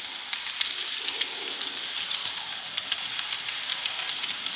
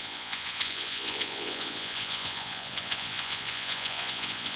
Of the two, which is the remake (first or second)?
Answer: second